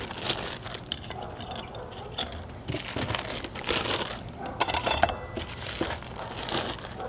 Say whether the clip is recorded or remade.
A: recorded